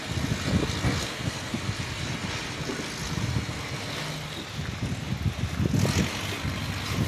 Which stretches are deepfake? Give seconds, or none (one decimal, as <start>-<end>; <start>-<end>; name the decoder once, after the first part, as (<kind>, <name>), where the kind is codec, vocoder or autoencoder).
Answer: 1.0-1.6 (codec, SNAC)